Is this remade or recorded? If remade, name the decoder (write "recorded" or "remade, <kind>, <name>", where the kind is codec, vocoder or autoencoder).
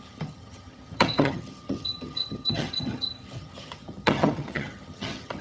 remade, vocoder, HiFi-GAN